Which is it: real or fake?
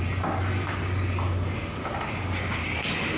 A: real